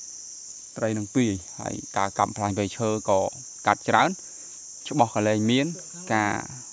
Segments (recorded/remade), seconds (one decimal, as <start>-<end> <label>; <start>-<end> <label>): 0.0-0.5 recorded; 0.5-2.5 remade; 2.5-6.7 recorded